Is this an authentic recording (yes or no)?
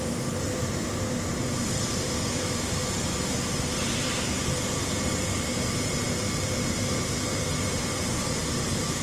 no